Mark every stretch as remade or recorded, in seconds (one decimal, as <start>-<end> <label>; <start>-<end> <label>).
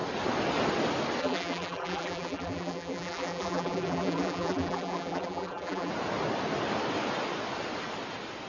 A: 0.0-1.2 recorded; 1.2-5.9 remade; 5.9-8.5 recorded